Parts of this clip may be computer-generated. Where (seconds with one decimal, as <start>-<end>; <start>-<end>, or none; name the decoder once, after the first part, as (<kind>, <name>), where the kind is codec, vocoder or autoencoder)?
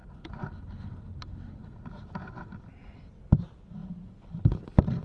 0.0-3.0 (vocoder, BigVGAN v2)